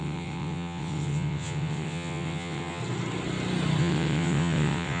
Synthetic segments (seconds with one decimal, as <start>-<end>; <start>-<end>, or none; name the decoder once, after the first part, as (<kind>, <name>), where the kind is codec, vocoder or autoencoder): 0.0-2.8 (vocoder, WaveNeXt); 3.8-5.0